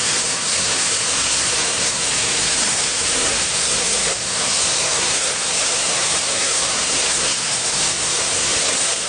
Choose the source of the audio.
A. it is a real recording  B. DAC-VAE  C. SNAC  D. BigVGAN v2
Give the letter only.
C